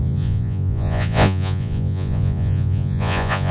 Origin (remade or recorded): remade